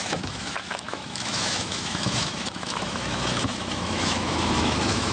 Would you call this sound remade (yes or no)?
yes